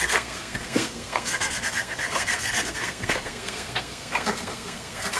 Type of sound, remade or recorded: remade